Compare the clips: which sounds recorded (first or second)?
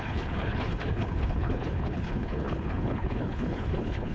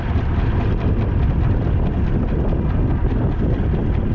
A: second